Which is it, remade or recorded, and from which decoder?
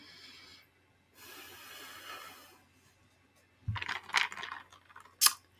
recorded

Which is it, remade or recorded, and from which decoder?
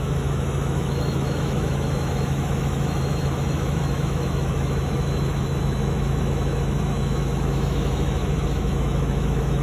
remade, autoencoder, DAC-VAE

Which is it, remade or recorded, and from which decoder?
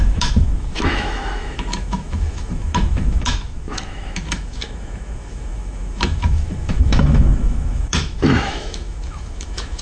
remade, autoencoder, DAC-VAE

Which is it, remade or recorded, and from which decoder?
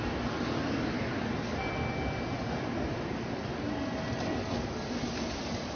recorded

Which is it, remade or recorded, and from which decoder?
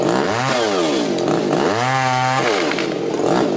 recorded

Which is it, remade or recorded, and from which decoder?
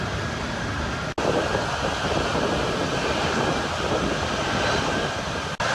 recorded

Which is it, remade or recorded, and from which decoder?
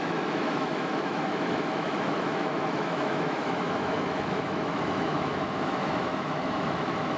remade, autoencoder, DAC-VAE